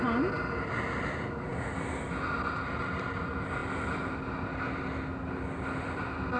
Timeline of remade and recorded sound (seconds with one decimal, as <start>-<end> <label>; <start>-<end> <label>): 0.0-6.4 recorded